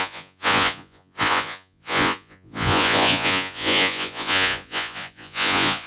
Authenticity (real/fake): fake